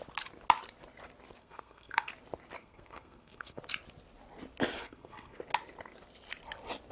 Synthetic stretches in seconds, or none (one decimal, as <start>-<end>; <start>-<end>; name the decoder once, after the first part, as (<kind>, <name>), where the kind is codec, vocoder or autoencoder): 1.4-2.1 (codec, SNAC); 2.6-3.6; 4.8-5.4